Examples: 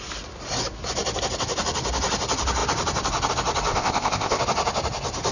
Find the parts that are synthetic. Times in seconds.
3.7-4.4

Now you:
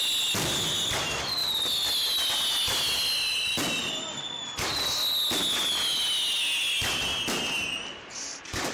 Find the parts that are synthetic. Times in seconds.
none

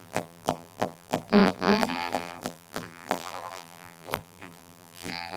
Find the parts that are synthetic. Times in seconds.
0.0-5.4

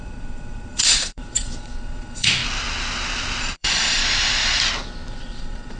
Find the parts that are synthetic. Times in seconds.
0.0-2.4; 3.4-4.0; 5.1-5.8

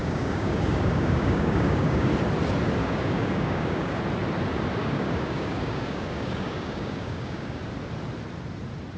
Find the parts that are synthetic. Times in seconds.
0.0-2.1; 2.8-4.0; 4.8-7.6